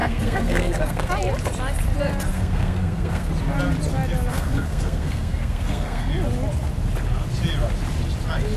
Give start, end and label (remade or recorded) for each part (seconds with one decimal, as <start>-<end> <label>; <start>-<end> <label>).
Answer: 0.0-1.1 remade; 1.1-2.3 recorded; 2.3-3.3 remade; 3.3-4.3 recorded; 4.3-6.1 remade; 6.1-8.6 recorded